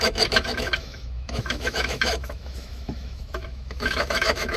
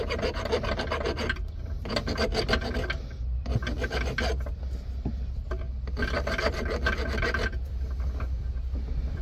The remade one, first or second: first